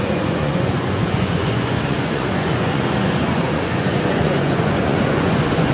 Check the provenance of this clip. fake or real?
fake